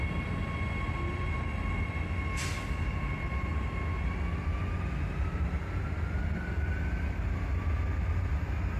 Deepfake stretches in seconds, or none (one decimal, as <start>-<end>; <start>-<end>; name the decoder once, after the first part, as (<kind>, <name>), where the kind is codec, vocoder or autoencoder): none